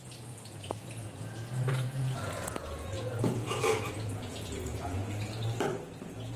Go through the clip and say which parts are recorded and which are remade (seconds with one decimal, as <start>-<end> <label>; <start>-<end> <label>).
0.0-5.0 remade; 5.0-6.4 recorded